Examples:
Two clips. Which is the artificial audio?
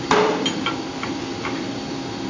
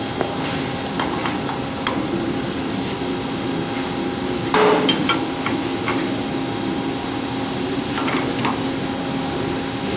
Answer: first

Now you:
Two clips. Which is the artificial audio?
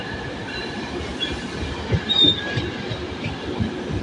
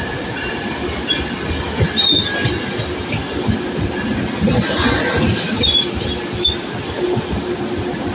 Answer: first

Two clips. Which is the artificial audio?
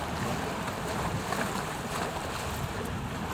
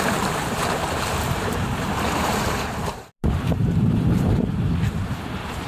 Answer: second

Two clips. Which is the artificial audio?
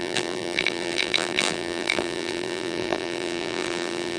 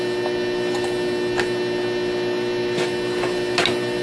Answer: first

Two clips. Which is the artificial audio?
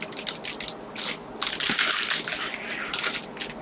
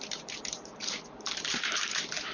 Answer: second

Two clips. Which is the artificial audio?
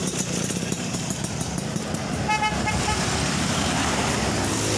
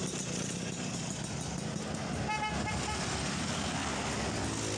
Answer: first